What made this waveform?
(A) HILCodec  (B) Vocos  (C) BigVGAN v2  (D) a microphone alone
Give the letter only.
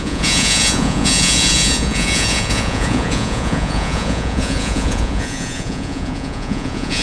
B